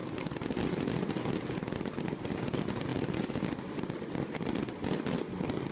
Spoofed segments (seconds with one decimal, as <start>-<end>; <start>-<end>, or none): none